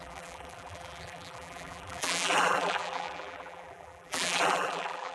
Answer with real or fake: fake